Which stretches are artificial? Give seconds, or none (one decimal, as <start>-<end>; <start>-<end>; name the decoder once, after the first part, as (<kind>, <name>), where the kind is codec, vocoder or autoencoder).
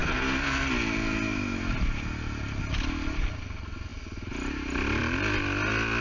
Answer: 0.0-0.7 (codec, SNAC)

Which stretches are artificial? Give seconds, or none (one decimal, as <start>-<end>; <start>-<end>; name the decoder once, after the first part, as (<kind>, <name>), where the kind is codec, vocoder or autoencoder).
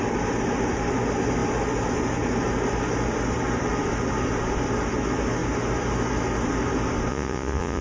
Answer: 7.1-7.8 (vocoder, Vocos)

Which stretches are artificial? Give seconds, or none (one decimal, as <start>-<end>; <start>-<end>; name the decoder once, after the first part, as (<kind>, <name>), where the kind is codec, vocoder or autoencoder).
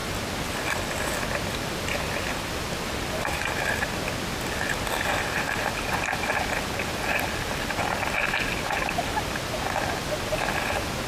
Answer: none